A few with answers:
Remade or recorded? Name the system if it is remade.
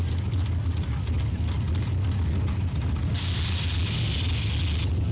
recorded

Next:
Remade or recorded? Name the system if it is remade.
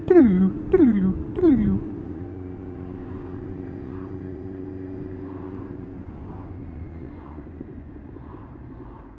remade, vocoder, Vocos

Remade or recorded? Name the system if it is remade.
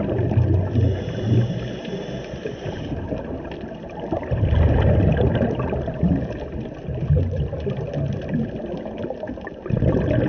recorded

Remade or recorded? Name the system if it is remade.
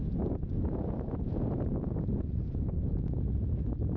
remade, vocoder, Vocos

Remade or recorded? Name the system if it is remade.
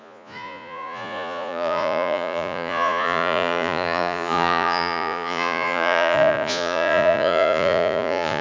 remade, vocoder, Vocos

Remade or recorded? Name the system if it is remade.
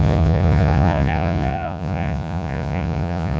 remade, vocoder, Vocos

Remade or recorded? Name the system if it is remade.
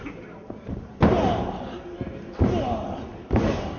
recorded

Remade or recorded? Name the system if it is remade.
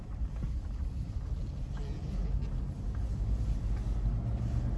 recorded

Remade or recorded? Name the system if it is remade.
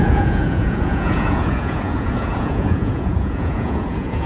remade, vocoder, Vocos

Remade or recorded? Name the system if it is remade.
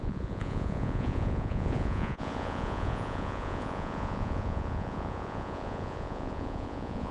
remade, vocoder, Vocos